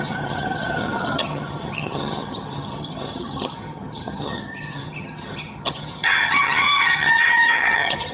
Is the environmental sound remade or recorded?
remade